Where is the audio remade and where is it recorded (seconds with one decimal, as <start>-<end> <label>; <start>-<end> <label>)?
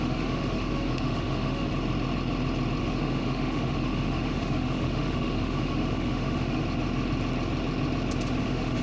0.0-1.7 remade; 1.7-2.8 recorded; 2.8-6.6 remade; 6.6-8.4 recorded; 8.4-8.8 remade